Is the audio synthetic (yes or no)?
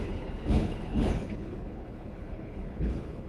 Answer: yes